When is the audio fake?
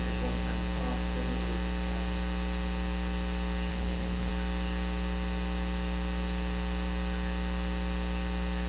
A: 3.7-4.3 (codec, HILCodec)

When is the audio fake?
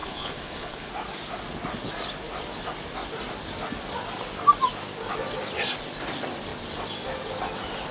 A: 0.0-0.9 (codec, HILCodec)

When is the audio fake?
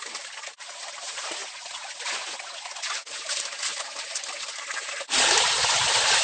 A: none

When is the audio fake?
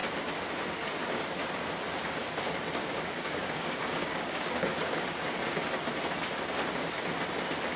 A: 2.8-5.3 (codec, DAC)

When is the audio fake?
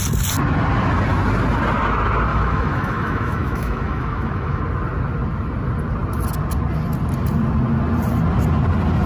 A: 2.3-4.6 (autoencoder, DAC-VAE)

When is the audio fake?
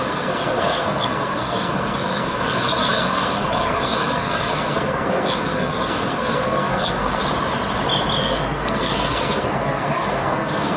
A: 0.0-7.2 (codec, SNAC); 8.2-10.8